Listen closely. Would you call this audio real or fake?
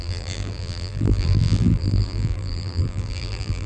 fake